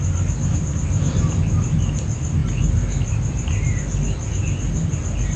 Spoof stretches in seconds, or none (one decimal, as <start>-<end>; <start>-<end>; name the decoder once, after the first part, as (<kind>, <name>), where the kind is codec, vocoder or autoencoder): none